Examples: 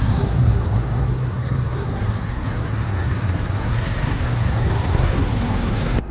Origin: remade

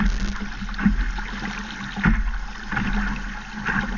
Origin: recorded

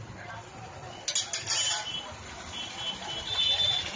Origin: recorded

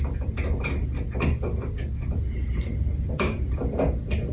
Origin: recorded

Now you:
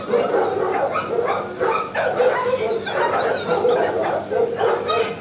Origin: recorded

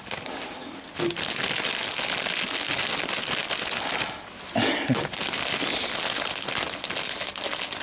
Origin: recorded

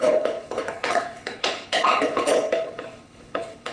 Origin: remade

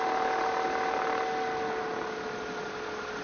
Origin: recorded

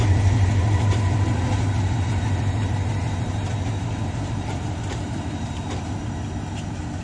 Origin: remade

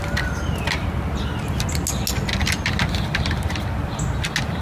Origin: recorded